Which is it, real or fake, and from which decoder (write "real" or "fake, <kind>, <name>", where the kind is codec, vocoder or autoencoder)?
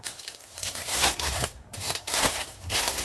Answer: fake, codec, SNAC